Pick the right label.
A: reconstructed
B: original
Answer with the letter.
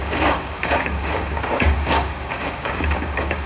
A